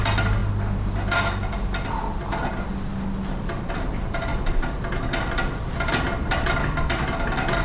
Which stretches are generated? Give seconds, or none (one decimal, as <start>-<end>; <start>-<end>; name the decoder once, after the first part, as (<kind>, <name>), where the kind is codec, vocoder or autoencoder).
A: none